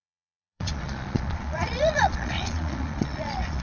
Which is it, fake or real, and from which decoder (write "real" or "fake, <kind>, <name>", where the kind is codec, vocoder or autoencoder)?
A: fake, vocoder, Vocos